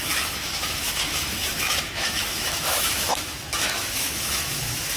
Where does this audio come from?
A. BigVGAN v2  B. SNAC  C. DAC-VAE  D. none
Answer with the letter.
C